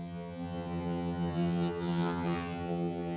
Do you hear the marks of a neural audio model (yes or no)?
yes